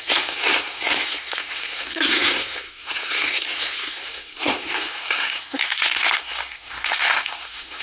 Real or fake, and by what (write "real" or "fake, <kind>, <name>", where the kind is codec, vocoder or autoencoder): fake, codec, SNAC